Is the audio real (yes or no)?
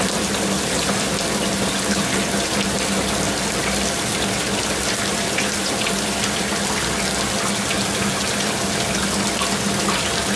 yes